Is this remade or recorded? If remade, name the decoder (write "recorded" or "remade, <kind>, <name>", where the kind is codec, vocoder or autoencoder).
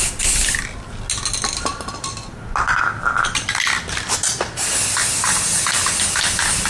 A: recorded